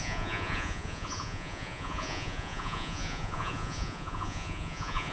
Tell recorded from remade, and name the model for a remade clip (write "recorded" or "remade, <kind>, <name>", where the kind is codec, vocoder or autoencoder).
remade, vocoder, Vocos